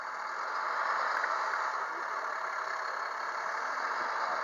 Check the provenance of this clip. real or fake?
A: real